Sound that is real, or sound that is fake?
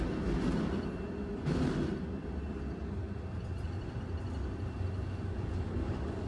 real